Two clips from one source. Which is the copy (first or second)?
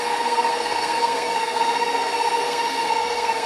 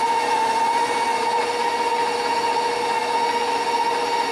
first